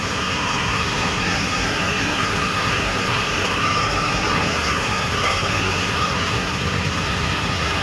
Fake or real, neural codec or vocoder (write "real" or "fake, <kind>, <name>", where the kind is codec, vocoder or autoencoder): fake, codec, SNAC